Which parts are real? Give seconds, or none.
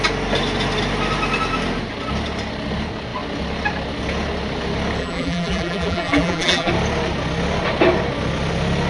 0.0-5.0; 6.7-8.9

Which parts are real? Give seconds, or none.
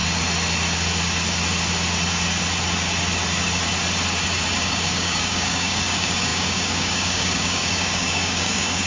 0.0-4.6